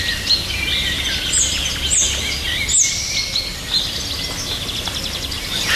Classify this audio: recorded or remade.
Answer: recorded